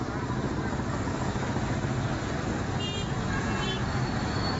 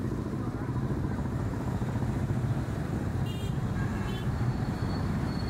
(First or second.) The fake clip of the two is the second